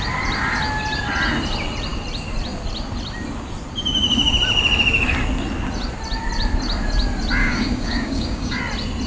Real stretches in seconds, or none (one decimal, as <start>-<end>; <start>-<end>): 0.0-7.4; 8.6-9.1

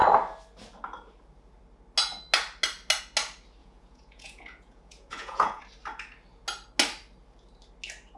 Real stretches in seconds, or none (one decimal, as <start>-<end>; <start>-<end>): 0.0-3.6; 5.6-8.2

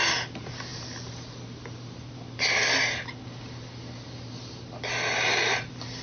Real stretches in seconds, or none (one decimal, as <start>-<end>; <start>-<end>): 0.0-6.0

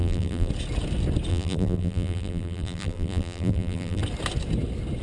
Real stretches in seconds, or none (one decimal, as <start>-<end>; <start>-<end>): 0.5-1.3; 4.0-5.0